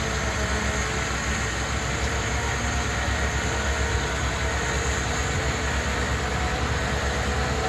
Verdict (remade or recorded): recorded